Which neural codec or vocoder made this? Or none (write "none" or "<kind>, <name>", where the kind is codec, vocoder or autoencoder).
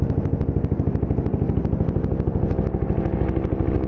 none